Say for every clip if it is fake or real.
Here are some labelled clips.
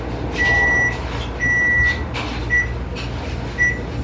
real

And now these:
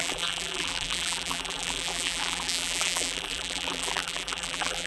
fake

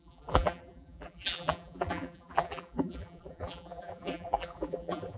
fake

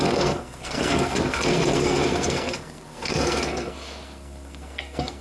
fake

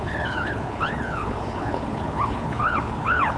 fake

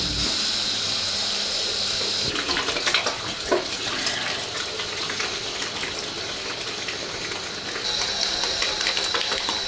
real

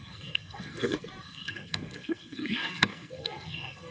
fake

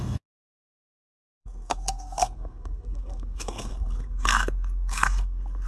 fake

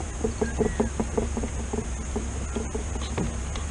real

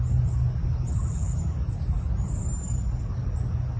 real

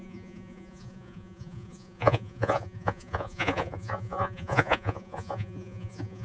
fake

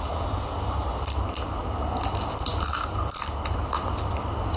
real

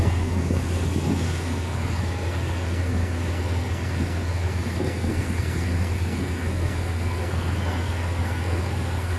fake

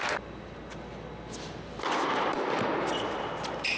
real